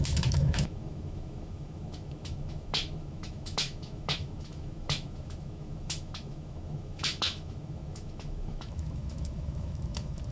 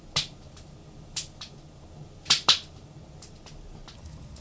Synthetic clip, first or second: first